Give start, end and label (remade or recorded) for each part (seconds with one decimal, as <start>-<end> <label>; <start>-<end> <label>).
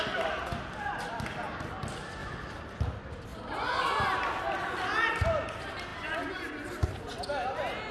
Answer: 0.0-7.9 recorded